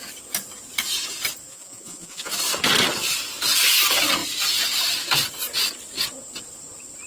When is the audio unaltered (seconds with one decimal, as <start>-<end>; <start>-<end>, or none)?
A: 0.0-1.5; 2.3-7.1